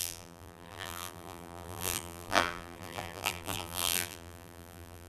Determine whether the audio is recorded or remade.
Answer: remade